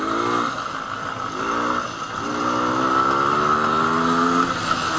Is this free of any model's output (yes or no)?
yes